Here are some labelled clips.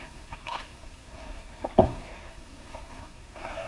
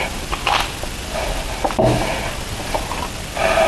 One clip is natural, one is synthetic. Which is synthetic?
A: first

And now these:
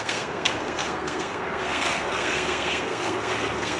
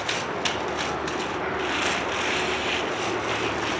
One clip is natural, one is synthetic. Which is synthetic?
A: first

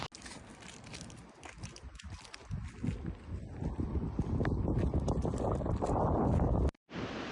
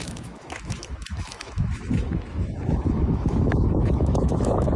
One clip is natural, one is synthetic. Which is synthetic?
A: second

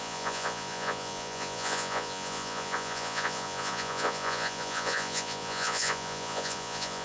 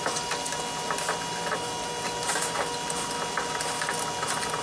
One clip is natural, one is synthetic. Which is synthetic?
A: first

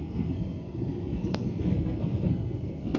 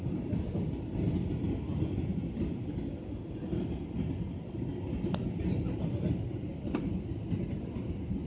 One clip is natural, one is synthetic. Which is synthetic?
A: first